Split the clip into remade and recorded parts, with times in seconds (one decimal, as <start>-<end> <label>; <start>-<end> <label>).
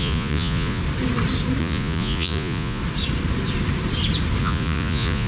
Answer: 0.0-0.8 remade; 0.8-1.6 recorded; 1.6-2.8 remade; 2.8-4.4 recorded; 4.4-5.3 remade